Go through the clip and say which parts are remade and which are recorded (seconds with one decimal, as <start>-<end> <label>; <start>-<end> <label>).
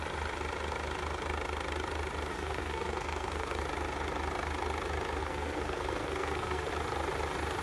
0.0-2.3 recorded; 2.3-3.6 remade; 3.6-5.2 recorded; 5.2-6.7 remade; 6.7-7.6 recorded